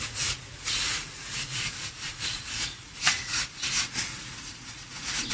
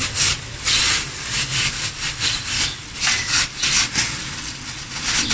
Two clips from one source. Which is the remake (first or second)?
first